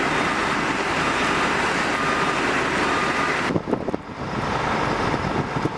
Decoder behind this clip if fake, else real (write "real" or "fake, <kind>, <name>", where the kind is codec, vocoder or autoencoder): real